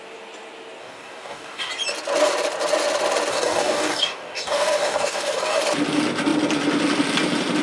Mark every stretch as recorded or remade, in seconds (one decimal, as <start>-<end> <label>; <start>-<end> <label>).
0.0-0.8 recorded; 0.8-1.7 remade; 1.7-3.3 recorded; 3.3-5.6 remade; 5.6-7.6 recorded